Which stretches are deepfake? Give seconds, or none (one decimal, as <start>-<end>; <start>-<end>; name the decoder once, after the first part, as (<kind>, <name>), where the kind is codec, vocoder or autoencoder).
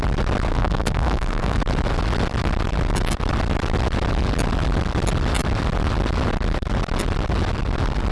0.5-1.6 (codec, SNAC)